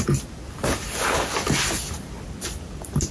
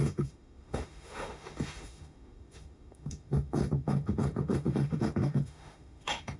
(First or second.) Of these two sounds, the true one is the first